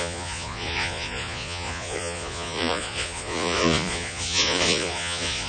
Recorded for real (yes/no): no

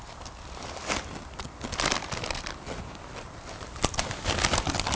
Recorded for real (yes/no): yes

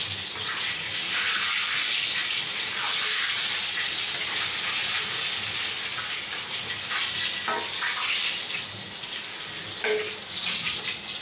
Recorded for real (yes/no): yes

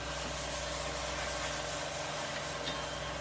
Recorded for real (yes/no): yes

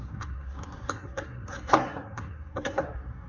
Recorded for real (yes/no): no